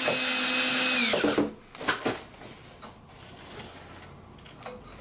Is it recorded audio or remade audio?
recorded